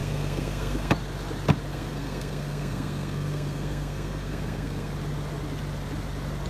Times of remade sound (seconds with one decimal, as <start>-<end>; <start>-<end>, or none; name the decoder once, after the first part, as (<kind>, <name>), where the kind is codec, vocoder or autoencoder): 0.0-0.9 (codec, SNAC); 1.7-4.9